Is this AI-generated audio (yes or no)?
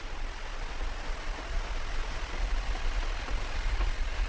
no